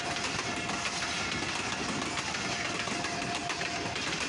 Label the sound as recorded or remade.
recorded